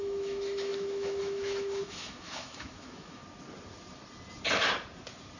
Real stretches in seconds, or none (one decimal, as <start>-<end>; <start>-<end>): 3.2-5.4